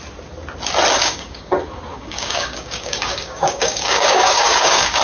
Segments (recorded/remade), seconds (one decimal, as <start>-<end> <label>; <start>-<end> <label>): 0.0-1.0 recorded; 1.0-1.5 remade; 1.5-1.9 recorded; 1.9-5.0 remade